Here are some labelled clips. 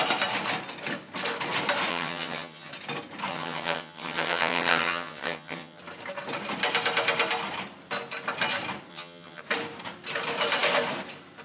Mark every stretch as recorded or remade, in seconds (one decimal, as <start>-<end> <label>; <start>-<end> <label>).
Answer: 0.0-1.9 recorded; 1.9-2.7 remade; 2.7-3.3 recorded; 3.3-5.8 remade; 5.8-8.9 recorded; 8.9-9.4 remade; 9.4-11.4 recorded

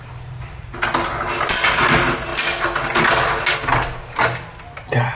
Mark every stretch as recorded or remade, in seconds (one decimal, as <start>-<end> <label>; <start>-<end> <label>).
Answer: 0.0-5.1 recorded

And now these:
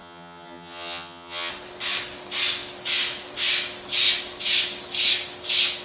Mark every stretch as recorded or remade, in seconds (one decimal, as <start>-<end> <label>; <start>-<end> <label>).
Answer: 0.0-1.5 remade; 1.5-5.8 recorded